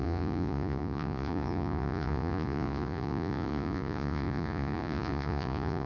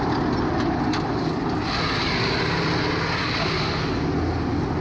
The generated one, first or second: first